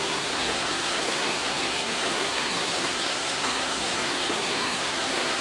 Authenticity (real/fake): fake